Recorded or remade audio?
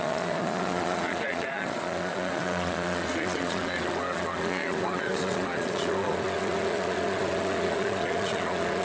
remade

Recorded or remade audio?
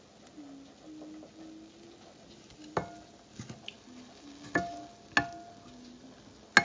recorded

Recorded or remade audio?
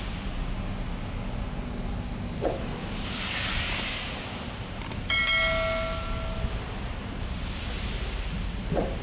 recorded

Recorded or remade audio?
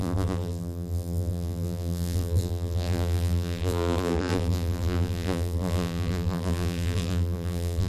remade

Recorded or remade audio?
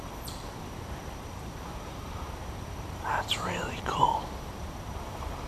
remade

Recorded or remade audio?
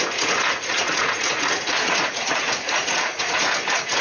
remade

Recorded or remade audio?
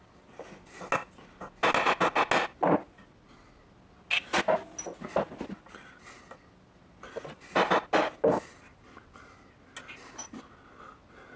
recorded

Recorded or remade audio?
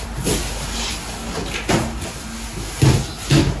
recorded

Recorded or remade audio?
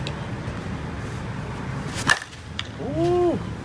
recorded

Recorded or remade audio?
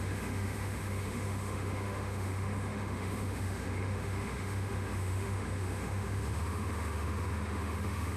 remade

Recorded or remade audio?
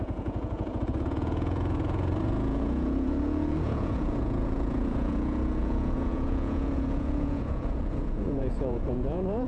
remade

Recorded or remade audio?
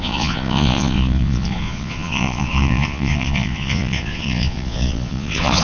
remade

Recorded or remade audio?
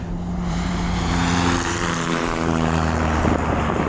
remade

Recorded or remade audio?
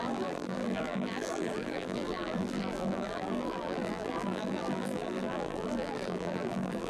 remade